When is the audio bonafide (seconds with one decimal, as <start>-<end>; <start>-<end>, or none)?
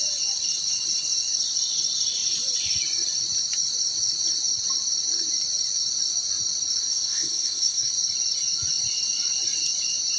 0.0-6.9; 7.9-10.2